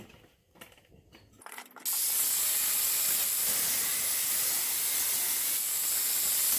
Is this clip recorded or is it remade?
recorded